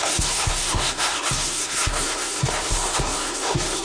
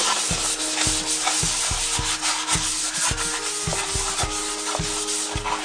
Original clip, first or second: second